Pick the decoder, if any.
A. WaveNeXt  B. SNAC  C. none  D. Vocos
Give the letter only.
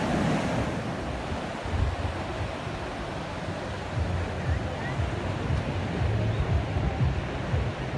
C